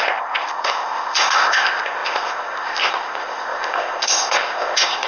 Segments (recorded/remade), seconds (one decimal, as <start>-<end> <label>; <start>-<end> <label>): 0.0-5.1 remade